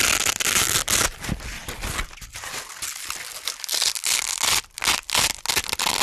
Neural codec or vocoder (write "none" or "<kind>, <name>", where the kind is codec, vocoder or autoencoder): none